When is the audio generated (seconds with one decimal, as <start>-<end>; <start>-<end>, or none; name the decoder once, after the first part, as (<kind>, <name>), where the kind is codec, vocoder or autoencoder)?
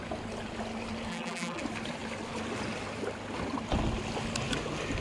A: 1.1-1.6 (vocoder, BigVGAN v2)